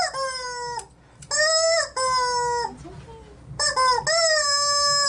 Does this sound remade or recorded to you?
recorded